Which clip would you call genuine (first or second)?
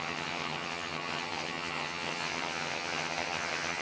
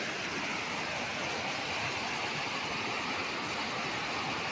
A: second